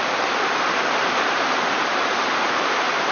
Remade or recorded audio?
remade